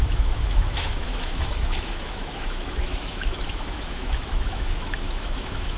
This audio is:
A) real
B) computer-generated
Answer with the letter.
B